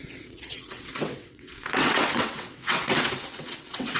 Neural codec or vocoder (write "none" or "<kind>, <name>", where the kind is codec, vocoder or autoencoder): vocoder, WaveNeXt